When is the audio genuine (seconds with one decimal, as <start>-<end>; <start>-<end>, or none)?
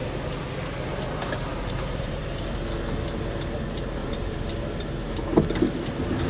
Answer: 0.0-1.5; 2.2-4.0; 4.6-6.3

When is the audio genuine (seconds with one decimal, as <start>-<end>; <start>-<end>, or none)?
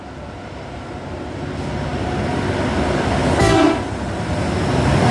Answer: 0.0-5.1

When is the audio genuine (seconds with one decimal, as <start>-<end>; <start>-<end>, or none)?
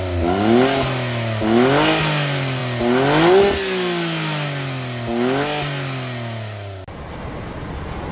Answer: 0.0-8.1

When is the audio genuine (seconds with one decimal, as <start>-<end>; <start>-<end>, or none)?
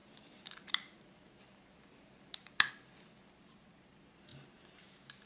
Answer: 2.7-4.3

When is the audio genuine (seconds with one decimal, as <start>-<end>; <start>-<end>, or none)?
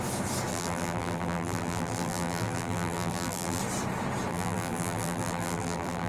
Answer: 0.0-0.5; 3.6-4.3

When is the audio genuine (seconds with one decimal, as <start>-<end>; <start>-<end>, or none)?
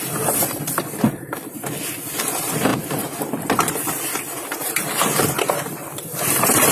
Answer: none